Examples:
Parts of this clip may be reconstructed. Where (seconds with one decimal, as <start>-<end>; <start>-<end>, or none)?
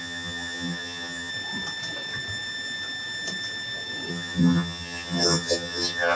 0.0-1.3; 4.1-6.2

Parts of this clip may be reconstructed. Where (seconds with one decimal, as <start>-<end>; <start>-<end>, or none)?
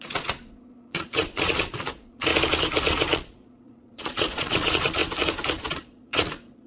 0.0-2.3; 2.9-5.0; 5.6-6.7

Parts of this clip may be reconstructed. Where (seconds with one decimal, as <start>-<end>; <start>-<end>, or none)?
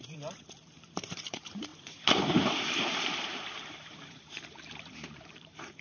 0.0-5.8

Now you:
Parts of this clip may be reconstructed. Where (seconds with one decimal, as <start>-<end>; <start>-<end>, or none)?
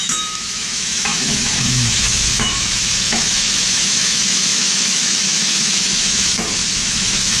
0.0-7.4